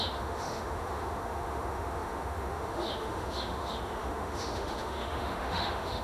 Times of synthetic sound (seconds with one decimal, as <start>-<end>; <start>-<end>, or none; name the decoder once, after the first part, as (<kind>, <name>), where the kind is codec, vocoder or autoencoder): 0.0-6.0 (autoencoder, DAC-VAE)